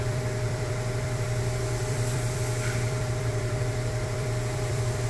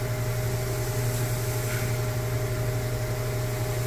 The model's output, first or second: first